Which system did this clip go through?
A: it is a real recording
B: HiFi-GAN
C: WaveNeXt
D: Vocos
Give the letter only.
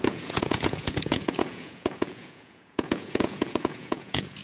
D